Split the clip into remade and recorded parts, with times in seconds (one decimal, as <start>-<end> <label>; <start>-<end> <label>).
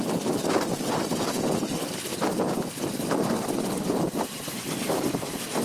0.0-5.6 recorded